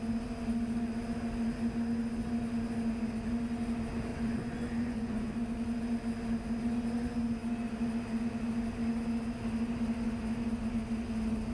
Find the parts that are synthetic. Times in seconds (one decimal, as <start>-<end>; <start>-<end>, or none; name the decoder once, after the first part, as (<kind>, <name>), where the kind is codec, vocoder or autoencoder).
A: 4.1-5.3 (vocoder, Vocos)